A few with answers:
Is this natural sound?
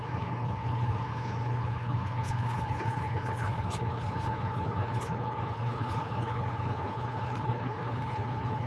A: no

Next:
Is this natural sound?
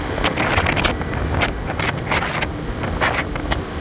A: yes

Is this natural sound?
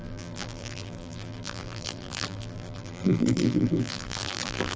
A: no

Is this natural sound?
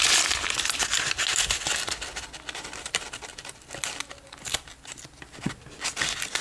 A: yes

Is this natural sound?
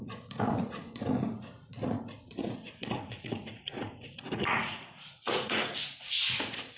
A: no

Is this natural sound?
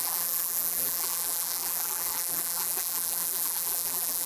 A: no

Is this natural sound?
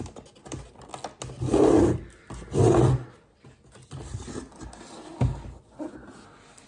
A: yes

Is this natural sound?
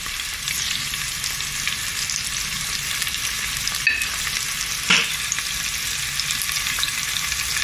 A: yes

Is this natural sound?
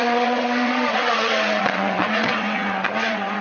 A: no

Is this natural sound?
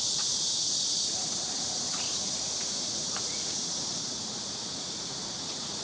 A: no